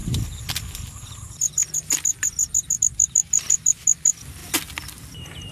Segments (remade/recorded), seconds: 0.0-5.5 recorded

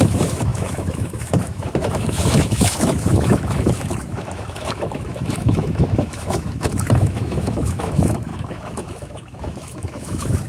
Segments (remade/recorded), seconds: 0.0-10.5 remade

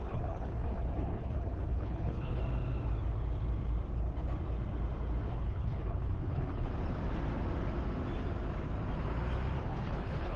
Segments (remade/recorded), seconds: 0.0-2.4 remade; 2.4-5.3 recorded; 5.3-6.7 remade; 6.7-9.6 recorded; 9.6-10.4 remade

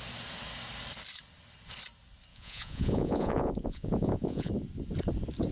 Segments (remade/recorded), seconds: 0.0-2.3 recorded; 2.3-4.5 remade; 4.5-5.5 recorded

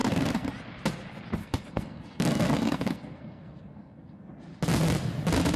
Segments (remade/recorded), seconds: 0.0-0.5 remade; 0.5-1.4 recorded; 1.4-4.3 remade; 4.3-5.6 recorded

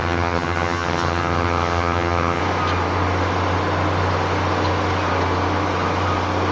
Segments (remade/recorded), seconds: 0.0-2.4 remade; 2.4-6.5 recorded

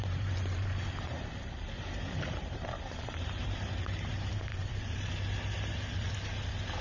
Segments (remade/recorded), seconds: 0.0-4.1 remade; 4.1-4.5 recorded; 4.5-5.1 remade; 5.1-6.8 recorded